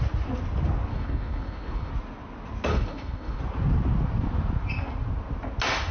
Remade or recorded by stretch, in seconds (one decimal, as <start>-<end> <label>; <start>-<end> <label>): 0.0-0.9 recorded; 0.9-1.9 remade; 1.9-2.7 recorded; 2.7-3.4 remade; 3.4-5.9 recorded